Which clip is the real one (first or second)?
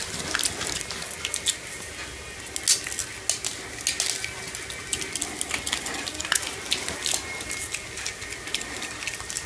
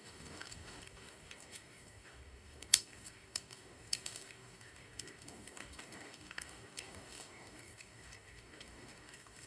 first